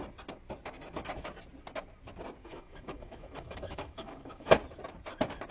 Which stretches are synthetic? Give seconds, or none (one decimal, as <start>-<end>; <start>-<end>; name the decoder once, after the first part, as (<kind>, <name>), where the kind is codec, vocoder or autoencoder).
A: 2.4-4.6 (autoencoder, DAC-VAE)